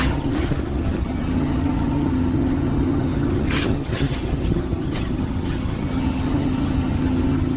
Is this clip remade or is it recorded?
remade